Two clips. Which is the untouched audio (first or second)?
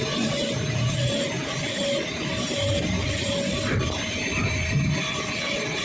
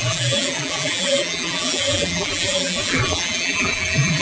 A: first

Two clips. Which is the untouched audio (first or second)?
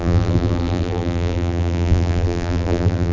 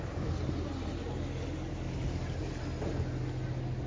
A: second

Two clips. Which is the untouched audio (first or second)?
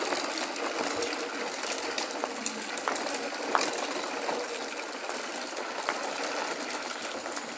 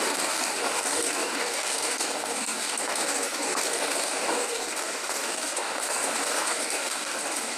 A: first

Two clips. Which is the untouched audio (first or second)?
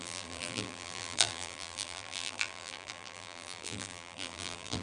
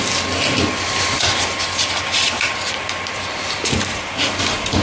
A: second